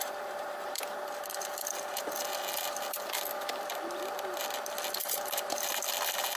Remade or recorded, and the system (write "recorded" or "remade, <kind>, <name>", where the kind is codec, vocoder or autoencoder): remade, vocoder, BigVGAN v2